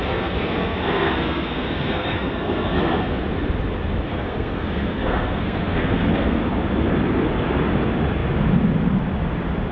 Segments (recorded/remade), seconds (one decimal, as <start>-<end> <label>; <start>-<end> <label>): 0.0-3.2 remade; 3.2-4.1 recorded; 4.1-6.4 remade; 6.4-9.7 recorded